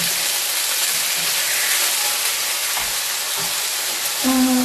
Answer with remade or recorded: recorded